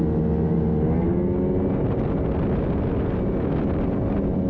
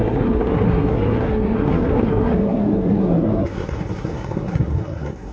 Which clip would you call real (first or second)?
first